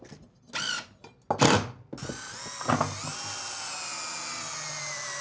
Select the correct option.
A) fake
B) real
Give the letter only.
B